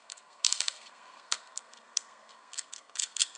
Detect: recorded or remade remade